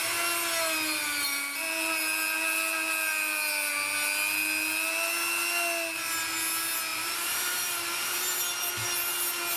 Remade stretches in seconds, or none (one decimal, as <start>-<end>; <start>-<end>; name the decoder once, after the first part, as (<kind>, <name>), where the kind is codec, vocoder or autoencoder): 6.9-8.2 (vocoder, BigVGAN v2)